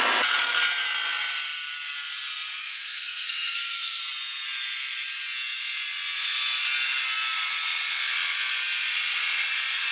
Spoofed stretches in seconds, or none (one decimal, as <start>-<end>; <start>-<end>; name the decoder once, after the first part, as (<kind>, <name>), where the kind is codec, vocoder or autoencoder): 2.6-4.0 (codec, SNAC)